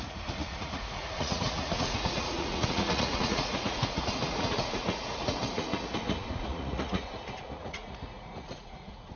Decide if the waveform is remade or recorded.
remade